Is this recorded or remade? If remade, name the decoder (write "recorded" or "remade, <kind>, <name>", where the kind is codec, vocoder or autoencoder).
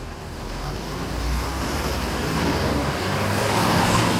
remade, codec, DAC